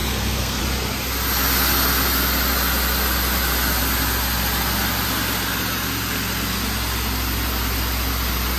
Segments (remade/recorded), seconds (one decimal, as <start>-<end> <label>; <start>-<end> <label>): 0.0-0.6 remade; 0.6-8.6 recorded